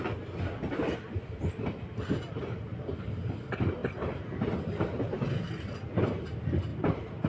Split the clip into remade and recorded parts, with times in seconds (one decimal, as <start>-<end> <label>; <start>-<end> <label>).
0.0-2.7 recorded; 2.7-3.3 remade; 3.3-3.8 recorded; 3.8-5.4 remade; 5.4-6.7 recorded; 6.7-7.3 remade